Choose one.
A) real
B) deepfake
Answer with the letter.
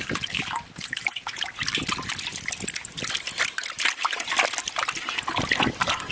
A